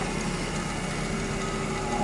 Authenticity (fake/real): real